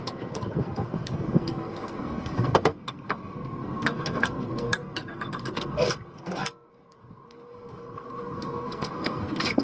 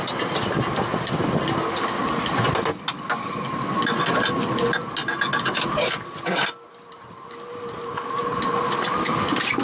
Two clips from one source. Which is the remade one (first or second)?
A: first